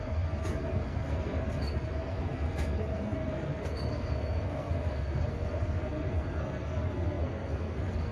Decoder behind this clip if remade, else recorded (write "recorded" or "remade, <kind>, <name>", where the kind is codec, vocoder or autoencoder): remade, codec, SNAC